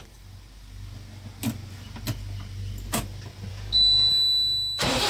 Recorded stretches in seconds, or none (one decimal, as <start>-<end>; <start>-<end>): 0.0-3.5; 4.1-5.1